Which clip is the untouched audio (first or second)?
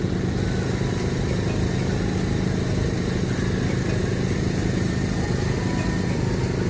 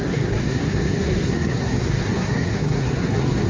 first